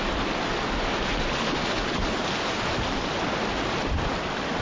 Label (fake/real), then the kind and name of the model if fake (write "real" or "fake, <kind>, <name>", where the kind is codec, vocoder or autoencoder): real